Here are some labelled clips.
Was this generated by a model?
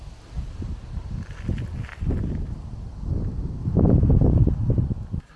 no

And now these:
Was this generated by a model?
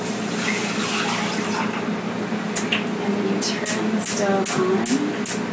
no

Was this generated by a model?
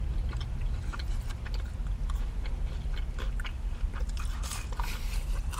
no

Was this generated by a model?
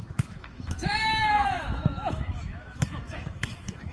yes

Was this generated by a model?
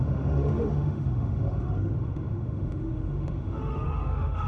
yes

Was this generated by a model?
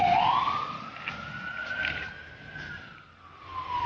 no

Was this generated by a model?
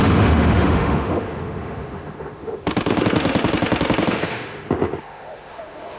yes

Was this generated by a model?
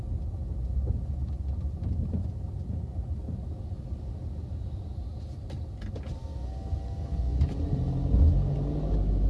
no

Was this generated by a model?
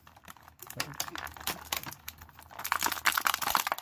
no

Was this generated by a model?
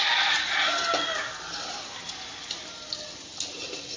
no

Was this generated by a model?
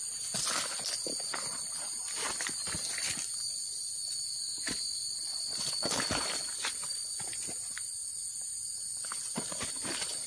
no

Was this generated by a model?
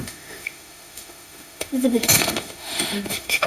yes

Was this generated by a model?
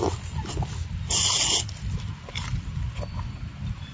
no